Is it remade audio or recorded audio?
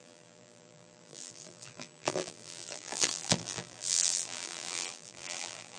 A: remade